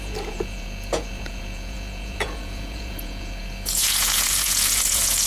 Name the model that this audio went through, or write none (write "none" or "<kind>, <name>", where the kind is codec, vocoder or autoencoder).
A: vocoder, Vocos